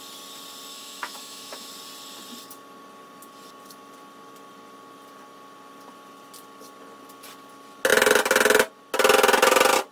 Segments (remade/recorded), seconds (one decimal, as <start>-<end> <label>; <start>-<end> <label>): 0.0-0.7 recorded; 0.7-1.7 remade; 1.7-9.9 recorded